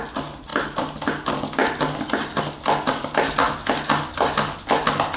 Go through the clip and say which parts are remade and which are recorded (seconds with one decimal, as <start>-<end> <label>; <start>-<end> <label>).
0.0-5.2 recorded